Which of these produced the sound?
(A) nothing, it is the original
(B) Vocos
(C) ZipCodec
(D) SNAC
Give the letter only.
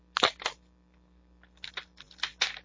A